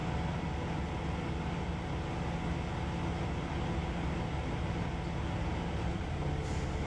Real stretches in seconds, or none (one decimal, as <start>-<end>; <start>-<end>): 0.0-6.9